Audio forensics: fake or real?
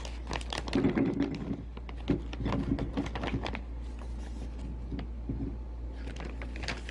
real